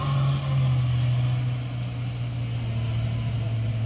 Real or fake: real